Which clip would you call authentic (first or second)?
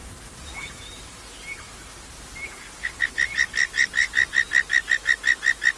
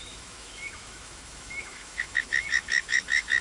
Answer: first